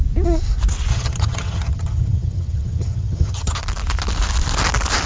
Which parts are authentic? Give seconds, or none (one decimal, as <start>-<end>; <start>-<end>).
0.0-0.9; 3.6-5.1